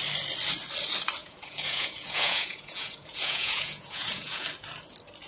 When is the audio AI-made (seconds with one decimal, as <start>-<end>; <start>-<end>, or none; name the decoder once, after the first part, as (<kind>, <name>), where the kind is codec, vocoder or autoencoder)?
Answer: 1.2-4.4 (vocoder, Vocos)